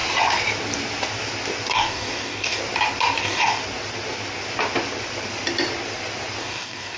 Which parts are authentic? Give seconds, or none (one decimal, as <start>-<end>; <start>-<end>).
0.0-1.7; 2.6-3.2; 3.6-6.4